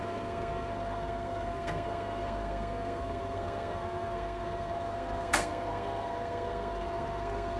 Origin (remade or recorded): remade